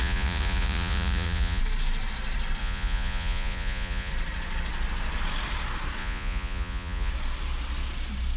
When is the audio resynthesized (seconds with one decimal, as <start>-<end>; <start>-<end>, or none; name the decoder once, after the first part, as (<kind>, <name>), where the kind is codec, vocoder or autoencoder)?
0.0-1.6 (vocoder, Vocos); 2.6-4.1; 6.0-7.1